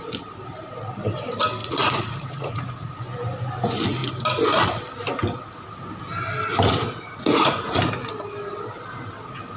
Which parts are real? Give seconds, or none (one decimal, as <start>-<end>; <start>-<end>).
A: 0.0-1.6; 3.0-6.5; 7.8-9.6